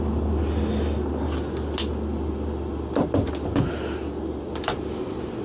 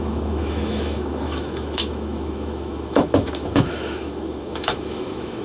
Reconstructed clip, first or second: second